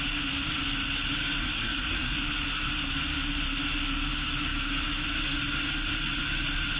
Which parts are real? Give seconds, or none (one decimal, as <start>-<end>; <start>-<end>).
0.0-1.4; 2.2-6.8